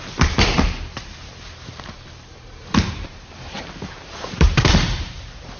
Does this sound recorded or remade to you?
remade